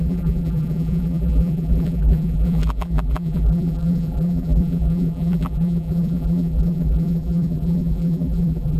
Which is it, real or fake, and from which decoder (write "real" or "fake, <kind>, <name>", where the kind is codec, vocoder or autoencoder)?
fake, vocoder, BigVGAN v2